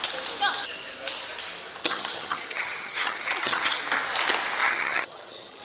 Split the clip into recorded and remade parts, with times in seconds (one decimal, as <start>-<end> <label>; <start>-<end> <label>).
0.0-1.8 recorded; 1.8-3.8 remade; 3.8-4.6 recorded; 4.6-5.6 remade

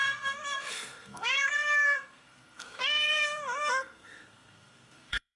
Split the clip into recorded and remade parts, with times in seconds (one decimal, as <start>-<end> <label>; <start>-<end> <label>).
0.0-5.4 remade